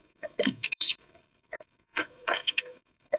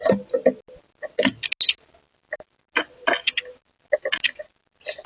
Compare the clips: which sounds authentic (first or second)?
second